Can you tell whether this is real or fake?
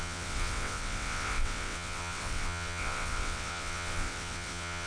fake